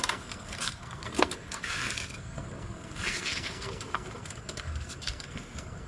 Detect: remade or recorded remade